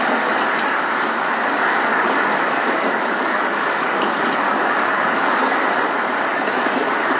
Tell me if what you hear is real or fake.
fake